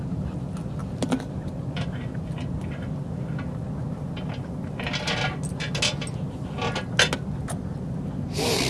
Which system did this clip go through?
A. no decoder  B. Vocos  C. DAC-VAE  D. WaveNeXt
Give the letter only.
A